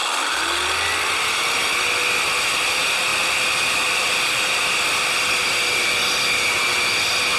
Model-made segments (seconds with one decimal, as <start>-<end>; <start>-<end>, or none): 3.1-4.6